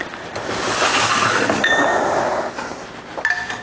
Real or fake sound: real